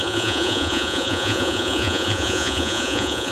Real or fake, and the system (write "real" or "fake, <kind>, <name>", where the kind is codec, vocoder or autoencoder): fake, vocoder, Vocos